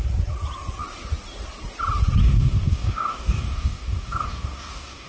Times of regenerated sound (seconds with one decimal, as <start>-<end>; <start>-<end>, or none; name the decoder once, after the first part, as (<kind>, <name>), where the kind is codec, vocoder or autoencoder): 2.2-5.1 (codec, DAC)